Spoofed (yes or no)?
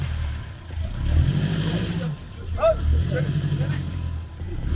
yes